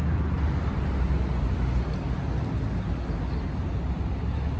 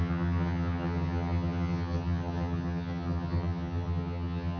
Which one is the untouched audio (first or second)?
first